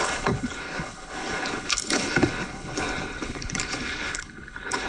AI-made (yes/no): yes